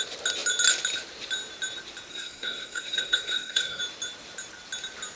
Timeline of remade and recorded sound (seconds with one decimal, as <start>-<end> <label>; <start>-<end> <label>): 0.0-2.1 recorded; 2.1-3.8 remade; 3.8-5.2 recorded